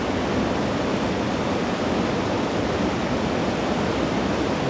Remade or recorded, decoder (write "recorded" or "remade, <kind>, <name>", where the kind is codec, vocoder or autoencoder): recorded